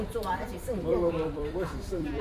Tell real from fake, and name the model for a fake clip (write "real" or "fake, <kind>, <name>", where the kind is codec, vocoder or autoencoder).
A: fake, vocoder, BigVGAN v2